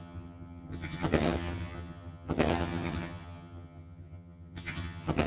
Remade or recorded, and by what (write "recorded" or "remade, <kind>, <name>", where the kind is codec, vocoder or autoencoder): remade, vocoder, HiFi-GAN